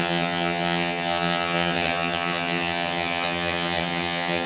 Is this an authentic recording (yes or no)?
no